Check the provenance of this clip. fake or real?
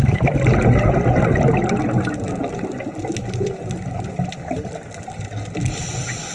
real